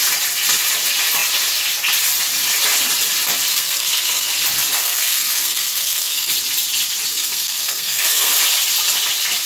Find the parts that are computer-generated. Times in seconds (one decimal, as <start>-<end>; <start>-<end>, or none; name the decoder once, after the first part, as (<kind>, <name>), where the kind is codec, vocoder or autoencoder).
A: 3.5-4.3 (codec, SNAC); 4.8-6.3; 7.1-8.3